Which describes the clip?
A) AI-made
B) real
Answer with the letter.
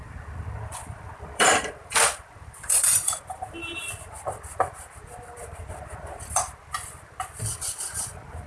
A